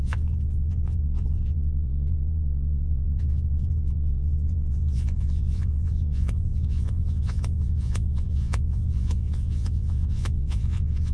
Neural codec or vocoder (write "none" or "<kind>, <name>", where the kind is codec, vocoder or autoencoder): vocoder, Vocos